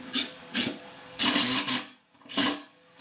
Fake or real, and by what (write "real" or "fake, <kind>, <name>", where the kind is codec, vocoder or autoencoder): fake, codec, DAC